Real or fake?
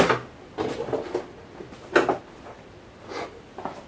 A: real